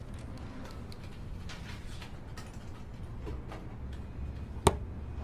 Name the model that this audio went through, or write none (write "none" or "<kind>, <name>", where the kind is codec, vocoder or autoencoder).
none